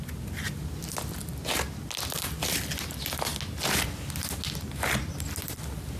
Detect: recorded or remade recorded